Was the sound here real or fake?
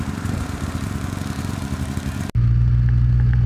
real